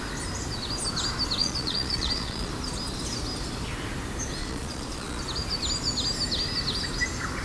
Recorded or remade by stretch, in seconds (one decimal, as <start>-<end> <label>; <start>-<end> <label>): 0.0-1.4 recorded; 1.4-2.5 remade; 2.5-4.4 recorded; 4.4-5.2 remade; 5.2-7.4 recorded